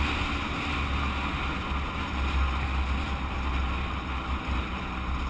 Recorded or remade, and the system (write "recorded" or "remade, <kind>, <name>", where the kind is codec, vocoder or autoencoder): recorded